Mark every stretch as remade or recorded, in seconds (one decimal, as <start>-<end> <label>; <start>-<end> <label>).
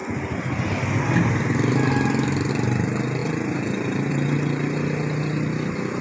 0.0-6.0 recorded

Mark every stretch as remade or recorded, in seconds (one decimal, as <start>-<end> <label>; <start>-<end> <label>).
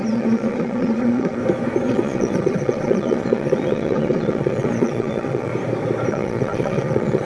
0.0-1.4 remade; 1.4-1.9 recorded; 1.9-5.5 remade; 5.5-6.1 recorded; 6.1-7.2 remade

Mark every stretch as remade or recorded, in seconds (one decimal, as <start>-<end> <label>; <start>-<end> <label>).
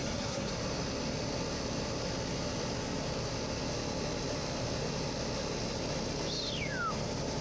0.0-0.5 remade; 0.5-7.4 recorded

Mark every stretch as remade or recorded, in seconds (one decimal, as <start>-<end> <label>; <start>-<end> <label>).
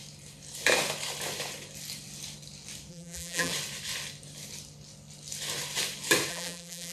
0.0-2.9 recorded; 2.9-3.5 remade; 3.5-6.3 recorded; 6.3-6.9 remade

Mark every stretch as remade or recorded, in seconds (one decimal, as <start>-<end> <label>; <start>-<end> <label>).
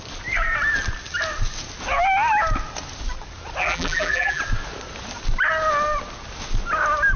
0.0-3.6 recorded; 3.6-4.4 remade; 4.4-7.2 recorded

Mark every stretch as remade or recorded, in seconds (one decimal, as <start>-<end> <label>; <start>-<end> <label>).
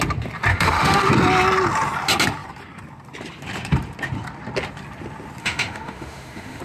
0.0-0.5 recorded; 0.5-1.1 remade; 1.1-5.4 recorded; 5.4-6.6 remade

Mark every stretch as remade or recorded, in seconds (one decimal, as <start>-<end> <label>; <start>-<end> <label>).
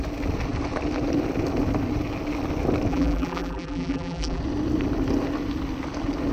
0.0-2.9 recorded; 2.9-4.4 remade; 4.4-6.3 recorded